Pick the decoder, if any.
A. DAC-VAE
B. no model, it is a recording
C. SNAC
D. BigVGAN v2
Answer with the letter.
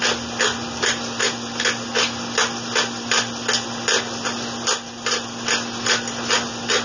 B